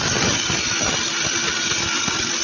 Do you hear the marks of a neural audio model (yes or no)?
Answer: no